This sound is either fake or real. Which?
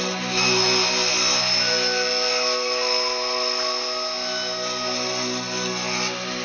real